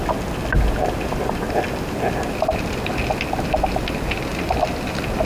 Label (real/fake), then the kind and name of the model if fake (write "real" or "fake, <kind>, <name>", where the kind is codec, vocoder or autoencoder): real